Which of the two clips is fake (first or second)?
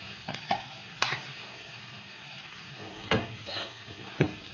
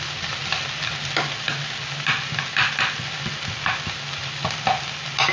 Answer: first